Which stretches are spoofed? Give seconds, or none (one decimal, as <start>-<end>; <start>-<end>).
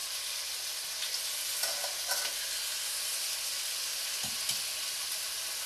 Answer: none